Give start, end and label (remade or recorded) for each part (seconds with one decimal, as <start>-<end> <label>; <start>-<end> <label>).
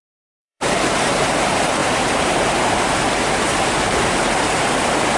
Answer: 0.0-5.2 remade